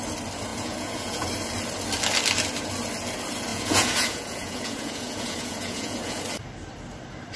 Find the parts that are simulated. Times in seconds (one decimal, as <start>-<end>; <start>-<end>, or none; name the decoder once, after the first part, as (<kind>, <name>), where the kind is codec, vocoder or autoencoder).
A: 0.5-1.3 (vocoder, Vocos); 3.5-6.2